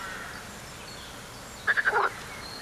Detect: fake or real real